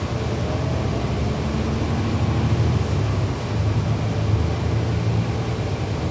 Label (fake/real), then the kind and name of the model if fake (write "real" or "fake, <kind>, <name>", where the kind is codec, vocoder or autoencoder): real